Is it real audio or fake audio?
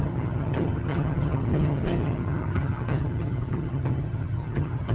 fake